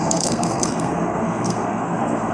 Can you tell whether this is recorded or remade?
remade